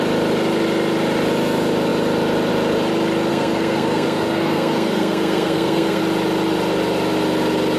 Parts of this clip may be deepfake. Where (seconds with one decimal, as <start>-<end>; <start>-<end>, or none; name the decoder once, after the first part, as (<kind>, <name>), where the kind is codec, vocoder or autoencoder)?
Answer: 3.3-6.0 (codec, SNAC)